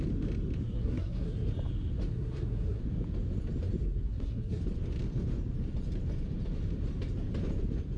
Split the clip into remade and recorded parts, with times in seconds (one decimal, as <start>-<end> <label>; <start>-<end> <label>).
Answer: 0.0-0.6 recorded; 0.6-1.5 remade; 1.5-2.1 recorded; 2.1-2.8 remade; 2.8-3.8 recorded; 3.8-4.6 remade; 4.6-8.0 recorded